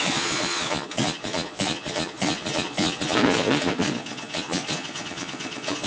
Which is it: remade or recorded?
remade